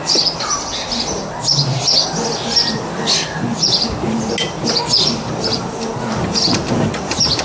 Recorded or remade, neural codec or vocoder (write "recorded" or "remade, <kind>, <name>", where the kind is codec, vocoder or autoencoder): recorded